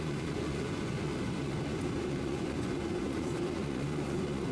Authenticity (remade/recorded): remade